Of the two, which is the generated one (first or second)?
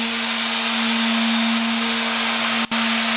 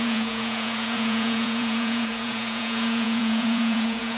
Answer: second